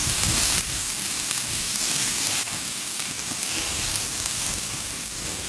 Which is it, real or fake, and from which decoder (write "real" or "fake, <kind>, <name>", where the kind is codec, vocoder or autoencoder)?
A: fake, codec, DAC